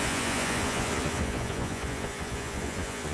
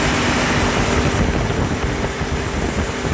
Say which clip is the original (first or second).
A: second